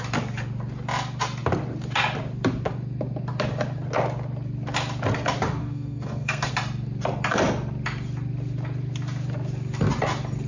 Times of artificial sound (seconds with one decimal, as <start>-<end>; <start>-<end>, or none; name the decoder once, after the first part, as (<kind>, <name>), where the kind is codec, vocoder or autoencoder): 5.6-6.5 (codec, SNAC)